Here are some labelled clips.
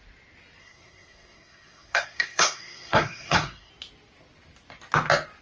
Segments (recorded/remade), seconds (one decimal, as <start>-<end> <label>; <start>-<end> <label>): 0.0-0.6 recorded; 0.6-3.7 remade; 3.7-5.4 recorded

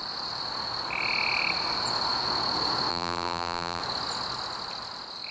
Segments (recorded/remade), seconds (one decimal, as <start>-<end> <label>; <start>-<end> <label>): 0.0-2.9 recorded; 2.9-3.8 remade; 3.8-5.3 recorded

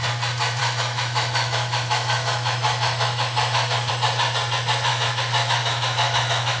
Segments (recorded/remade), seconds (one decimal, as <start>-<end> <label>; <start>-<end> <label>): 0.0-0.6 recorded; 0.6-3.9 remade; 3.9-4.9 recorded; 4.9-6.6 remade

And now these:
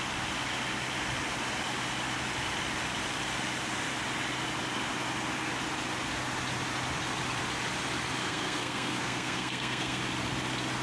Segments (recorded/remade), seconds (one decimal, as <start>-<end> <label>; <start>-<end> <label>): 0.0-8.2 recorded; 8.2-10.0 remade; 10.0-10.8 recorded

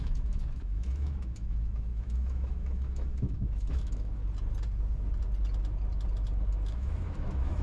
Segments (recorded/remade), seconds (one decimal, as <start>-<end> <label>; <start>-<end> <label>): 0.0-4.2 remade; 4.2-6.7 recorded; 6.7-7.6 remade

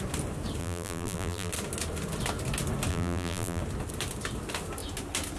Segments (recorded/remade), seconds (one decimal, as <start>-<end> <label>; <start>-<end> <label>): 0.0-0.6 recorded; 0.6-1.5 remade; 1.5-2.9 recorded; 2.9-3.6 remade; 3.6-5.4 recorded

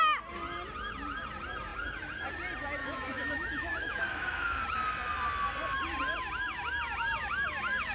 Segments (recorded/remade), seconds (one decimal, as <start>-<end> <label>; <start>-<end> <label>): 0.0-2.8 recorded; 2.8-4.6 remade; 4.6-7.9 recorded

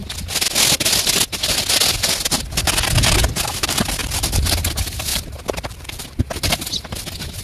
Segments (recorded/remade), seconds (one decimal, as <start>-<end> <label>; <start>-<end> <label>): 0.0-4.0 recorded; 4.0-4.5 remade; 4.5-5.1 recorded; 5.1-6.0 remade; 6.0-7.4 recorded